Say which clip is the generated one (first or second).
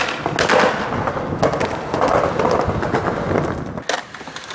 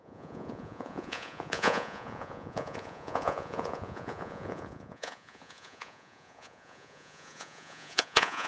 second